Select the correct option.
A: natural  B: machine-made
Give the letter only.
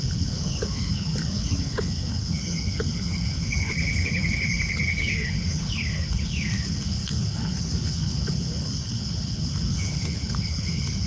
B